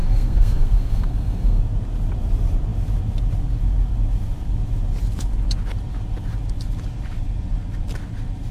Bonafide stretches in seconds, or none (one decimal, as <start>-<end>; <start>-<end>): 1.6-8.5